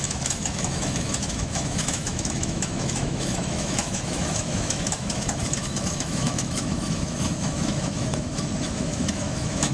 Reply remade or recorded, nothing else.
remade